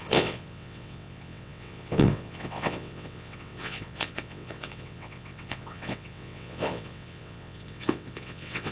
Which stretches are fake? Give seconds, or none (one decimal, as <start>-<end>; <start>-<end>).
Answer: 0.0-8.7